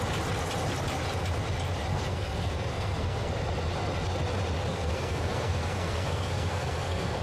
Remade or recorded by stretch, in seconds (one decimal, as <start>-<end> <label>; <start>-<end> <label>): 0.0-1.9 recorded; 1.9-3.3 remade; 3.3-4.7 recorded; 4.7-7.2 remade